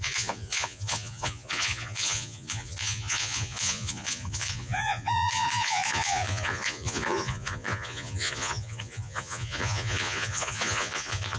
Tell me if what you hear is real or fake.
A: fake